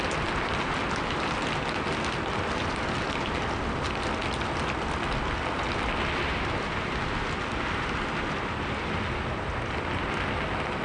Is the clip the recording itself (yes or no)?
yes